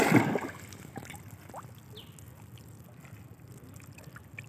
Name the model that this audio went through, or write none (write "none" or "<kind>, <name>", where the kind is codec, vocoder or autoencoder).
none